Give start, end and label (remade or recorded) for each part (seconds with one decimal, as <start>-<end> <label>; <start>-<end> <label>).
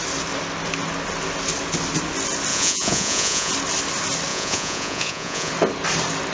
0.0-2.5 recorded; 2.5-3.5 remade; 3.5-4.3 recorded; 4.3-5.5 remade; 5.5-6.3 recorded